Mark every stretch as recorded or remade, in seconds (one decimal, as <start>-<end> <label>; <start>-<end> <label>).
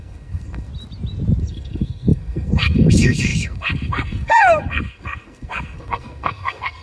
0.0-0.7 remade; 0.7-1.4 recorded; 1.4-6.8 remade